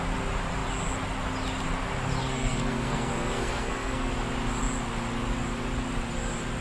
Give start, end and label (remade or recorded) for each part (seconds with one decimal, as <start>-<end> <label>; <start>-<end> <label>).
0.0-2.2 recorded; 2.2-4.1 remade; 4.1-6.6 recorded